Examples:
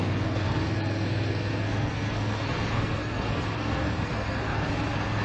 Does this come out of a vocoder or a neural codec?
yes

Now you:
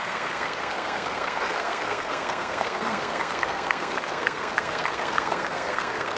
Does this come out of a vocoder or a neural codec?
yes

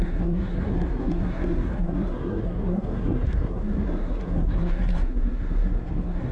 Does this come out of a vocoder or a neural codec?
yes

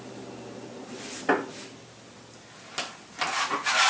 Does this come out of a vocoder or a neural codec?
no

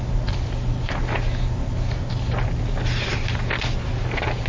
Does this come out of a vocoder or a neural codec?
no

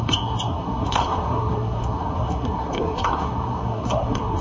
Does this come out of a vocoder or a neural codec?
yes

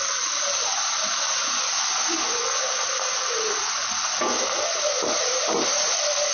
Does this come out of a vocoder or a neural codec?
no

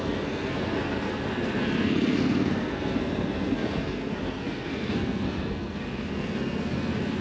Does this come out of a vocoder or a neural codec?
yes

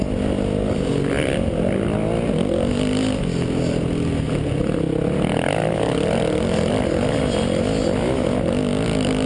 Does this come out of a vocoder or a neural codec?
no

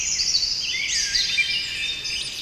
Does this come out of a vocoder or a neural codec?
no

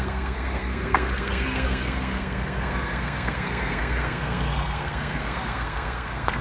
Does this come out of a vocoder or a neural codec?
yes